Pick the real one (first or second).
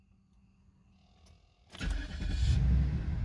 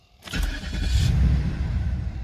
first